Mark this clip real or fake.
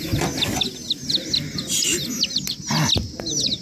real